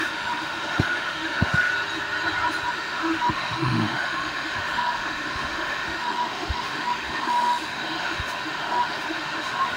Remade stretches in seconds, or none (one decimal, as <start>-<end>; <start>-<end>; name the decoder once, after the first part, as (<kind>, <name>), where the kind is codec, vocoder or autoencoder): 0.0-1.7 (autoencoder, DAC-VAE); 2.7-9.8